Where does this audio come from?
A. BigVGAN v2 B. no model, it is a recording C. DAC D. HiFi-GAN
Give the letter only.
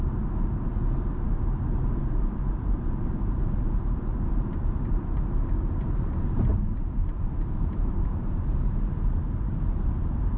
A